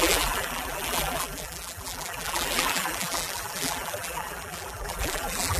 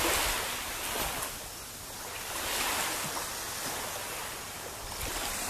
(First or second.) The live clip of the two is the second